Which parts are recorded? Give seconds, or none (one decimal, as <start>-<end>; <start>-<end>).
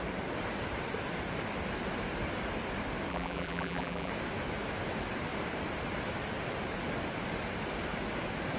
0.0-3.1; 4.1-8.6